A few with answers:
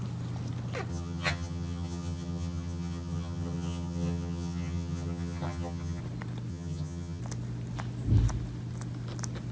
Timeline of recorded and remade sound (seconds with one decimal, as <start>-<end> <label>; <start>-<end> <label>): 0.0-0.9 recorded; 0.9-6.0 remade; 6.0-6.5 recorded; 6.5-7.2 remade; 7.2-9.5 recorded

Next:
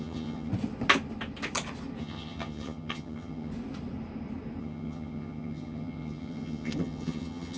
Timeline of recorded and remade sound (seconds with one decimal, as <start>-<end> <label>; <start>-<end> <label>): 0.0-0.5 remade; 0.5-2.0 recorded; 2.0-3.5 remade; 3.5-4.6 recorded; 4.6-7.6 remade

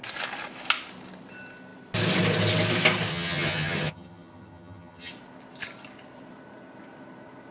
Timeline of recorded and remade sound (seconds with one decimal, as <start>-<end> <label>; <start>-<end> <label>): 0.0-3.1 recorded; 3.1-5.1 remade; 5.1-7.5 recorded

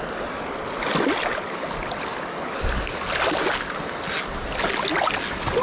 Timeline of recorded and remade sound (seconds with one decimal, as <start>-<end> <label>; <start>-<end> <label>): 0.0-5.6 recorded